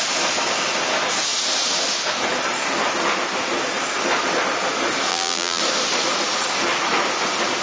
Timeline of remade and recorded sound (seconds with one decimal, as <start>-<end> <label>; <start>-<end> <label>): 0.0-5.1 recorded; 5.1-5.6 remade; 5.6-7.6 recorded